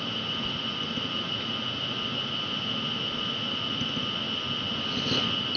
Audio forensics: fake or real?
real